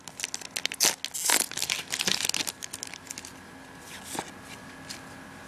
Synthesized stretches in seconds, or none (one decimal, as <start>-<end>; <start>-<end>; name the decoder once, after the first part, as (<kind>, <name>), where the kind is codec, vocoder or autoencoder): none